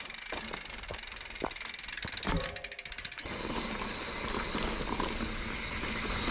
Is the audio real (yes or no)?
yes